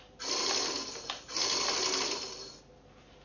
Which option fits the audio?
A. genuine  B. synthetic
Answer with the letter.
A